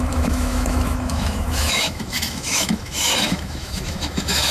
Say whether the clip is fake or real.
fake